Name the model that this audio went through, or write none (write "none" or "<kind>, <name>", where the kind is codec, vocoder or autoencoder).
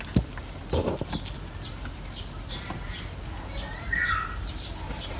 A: none